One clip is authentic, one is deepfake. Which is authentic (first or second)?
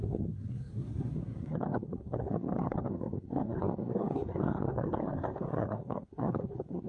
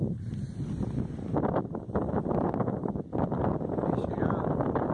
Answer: second